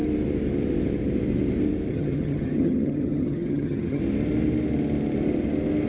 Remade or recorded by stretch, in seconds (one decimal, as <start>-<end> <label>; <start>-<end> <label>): 0.0-1.9 recorded; 1.9-4.0 remade; 4.0-5.9 recorded